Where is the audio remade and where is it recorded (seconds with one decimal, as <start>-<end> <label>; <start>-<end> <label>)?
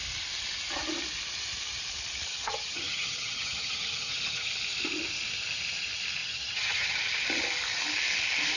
0.0-2.3 recorded; 2.3-4.5 remade; 4.5-6.2 recorded; 6.2-7.0 remade; 7.0-8.6 recorded